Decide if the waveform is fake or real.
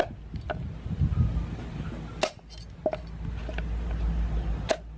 real